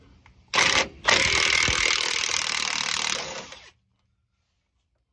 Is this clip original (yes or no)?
yes